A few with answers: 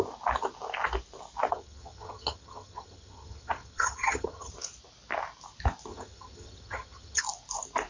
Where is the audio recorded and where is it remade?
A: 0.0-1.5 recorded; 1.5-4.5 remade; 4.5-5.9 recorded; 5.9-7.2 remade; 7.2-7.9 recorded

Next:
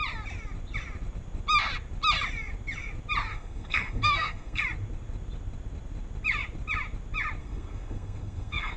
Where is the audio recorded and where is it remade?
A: 0.0-3.3 recorded; 3.3-4.6 remade; 4.6-7.4 recorded; 7.4-8.8 remade

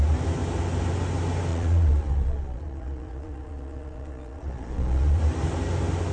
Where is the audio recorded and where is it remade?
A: 0.0-1.5 recorded; 1.5-5.2 remade; 5.2-6.1 recorded

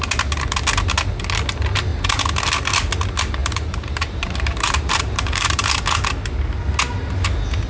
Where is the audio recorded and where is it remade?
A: 0.0-3.4 recorded; 3.4-5.8 remade; 5.8-7.7 recorded

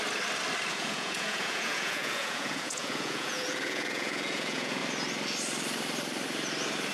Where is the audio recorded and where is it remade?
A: 0.0-0.7 recorded; 0.7-4.8 remade; 4.8-6.9 recorded